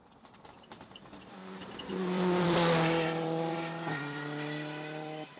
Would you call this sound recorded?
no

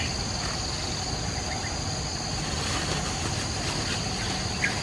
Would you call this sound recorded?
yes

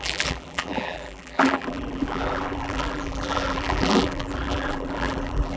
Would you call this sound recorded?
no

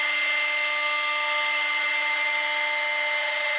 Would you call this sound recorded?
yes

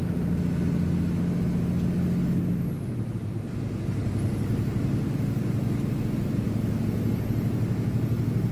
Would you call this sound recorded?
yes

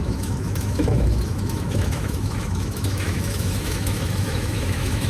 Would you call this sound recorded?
no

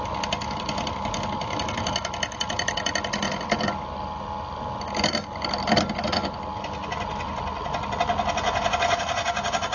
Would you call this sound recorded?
yes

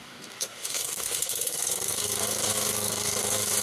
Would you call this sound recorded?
no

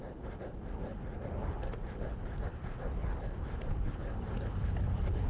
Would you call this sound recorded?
yes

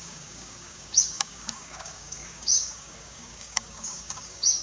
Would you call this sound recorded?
no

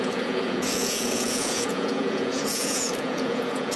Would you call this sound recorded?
no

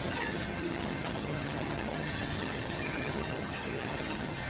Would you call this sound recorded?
no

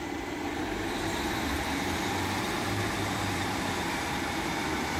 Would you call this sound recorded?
no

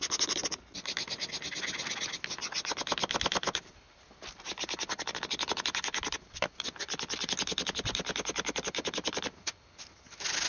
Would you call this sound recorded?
yes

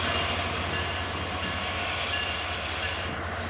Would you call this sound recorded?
yes